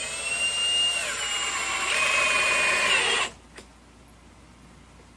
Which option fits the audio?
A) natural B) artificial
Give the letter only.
A